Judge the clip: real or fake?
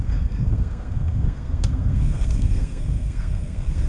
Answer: fake